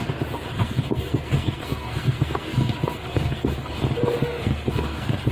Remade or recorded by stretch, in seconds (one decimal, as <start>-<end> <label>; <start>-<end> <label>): 0.0-0.5 recorded; 0.5-3.7 remade; 3.7-4.2 recorded; 4.2-5.3 remade